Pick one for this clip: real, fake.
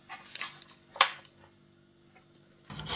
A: real